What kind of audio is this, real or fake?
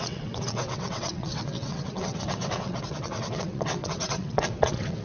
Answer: fake